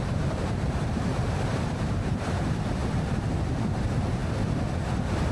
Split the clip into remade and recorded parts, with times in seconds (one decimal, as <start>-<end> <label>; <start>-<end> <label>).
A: 0.0-2.8 remade; 2.8-3.7 recorded; 3.7-4.2 remade; 4.2-5.3 recorded